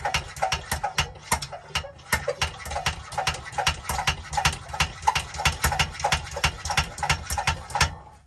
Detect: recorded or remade recorded